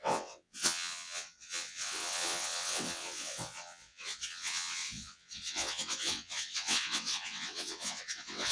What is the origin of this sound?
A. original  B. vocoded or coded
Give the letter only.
B